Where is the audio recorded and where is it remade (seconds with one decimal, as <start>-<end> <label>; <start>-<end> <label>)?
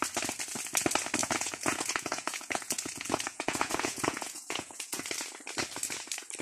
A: 0.0-1.2 recorded; 1.2-5.0 remade; 5.0-6.4 recorded